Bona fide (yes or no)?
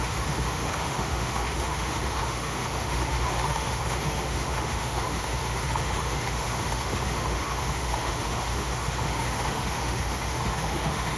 no